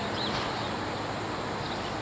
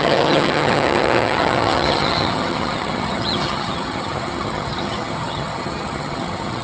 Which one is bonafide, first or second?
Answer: first